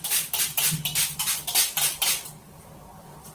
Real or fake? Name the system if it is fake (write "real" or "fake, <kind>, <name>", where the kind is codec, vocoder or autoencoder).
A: real